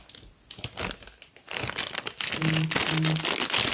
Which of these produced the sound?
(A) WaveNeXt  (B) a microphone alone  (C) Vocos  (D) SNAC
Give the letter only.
B